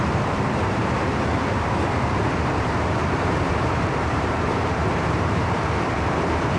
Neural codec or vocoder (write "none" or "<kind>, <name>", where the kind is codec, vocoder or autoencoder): vocoder, BigVGAN v2